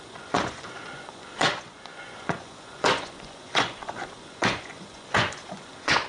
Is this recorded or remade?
remade